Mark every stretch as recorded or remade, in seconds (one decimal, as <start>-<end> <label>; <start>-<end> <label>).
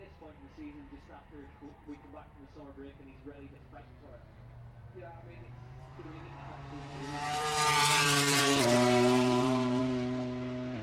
0.0-5.4 recorded; 5.4-9.8 remade; 9.8-10.8 recorded